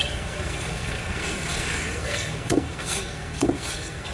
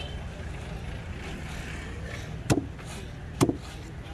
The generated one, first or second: first